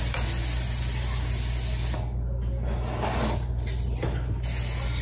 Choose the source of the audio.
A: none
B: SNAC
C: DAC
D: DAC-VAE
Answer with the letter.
A